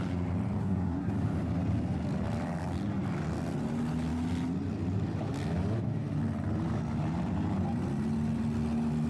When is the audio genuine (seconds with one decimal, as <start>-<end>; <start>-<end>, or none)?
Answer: 0.0-0.6; 1.1-9.1